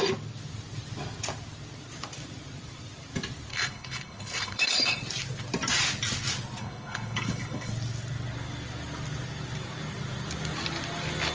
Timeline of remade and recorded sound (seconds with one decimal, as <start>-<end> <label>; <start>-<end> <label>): 0.0-3.5 recorded; 3.5-5.0 remade; 5.0-6.6 recorded; 6.6-7.7 remade; 7.7-11.3 recorded